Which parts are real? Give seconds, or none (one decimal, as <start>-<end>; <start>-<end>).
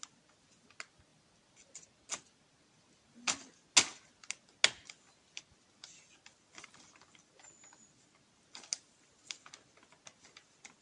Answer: 0.0-10.8